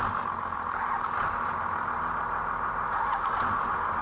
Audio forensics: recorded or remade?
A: recorded